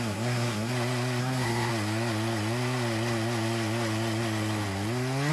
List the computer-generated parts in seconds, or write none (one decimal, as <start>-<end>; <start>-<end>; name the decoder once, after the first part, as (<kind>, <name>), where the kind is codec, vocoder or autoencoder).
0.0-0.7 (codec, SNAC); 1.2-1.7